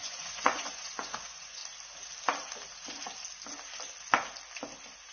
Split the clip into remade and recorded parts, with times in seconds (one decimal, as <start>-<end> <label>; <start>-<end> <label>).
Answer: 0.0-1.6 remade; 1.6-5.1 recorded